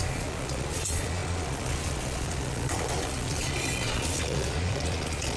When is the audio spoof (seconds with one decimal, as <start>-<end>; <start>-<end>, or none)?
0.0-5.4